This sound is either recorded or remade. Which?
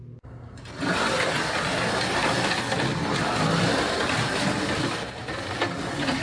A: recorded